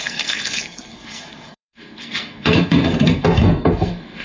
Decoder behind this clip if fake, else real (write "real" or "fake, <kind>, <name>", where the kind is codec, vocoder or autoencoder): fake, codec, SNAC